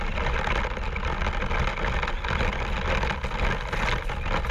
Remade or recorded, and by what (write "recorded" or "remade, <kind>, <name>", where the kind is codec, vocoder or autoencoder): recorded